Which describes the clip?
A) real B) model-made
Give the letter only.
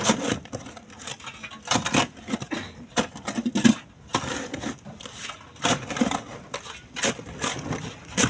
A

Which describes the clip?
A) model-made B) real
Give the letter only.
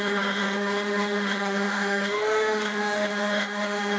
A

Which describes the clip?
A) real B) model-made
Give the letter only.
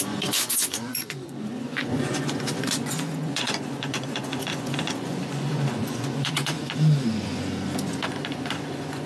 B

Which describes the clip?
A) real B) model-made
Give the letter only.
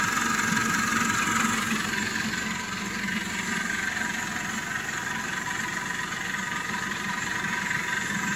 A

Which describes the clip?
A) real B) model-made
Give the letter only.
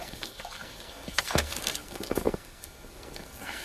B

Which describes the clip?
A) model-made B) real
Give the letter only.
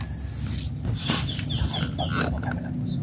B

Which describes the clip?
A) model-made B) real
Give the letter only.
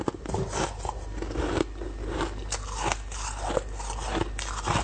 B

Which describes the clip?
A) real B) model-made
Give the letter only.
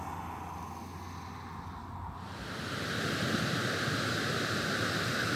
A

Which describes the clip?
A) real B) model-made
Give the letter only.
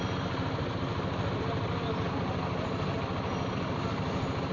A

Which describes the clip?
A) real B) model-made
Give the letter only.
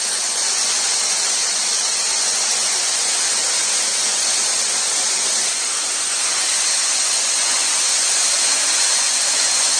B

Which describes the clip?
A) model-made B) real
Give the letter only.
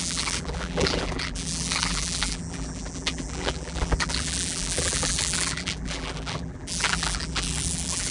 A